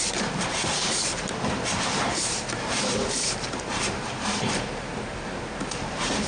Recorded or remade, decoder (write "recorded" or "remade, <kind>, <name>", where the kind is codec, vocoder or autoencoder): remade, vocoder, BigVGAN v2